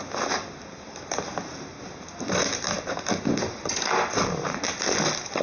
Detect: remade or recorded recorded